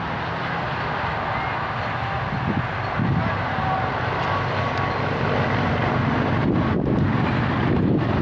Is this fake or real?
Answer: real